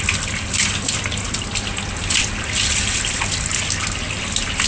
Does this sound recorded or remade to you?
recorded